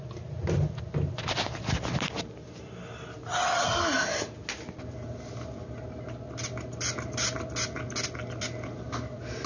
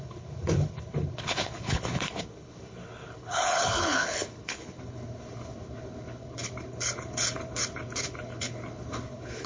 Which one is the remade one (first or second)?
second